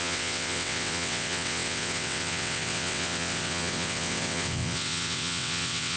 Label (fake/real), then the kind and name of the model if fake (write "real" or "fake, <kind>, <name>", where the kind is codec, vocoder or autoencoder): fake, vocoder, WaveNeXt